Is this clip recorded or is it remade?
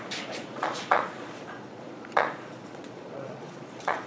remade